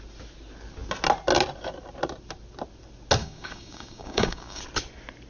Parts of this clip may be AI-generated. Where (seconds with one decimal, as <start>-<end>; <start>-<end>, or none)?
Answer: 3.2-4.6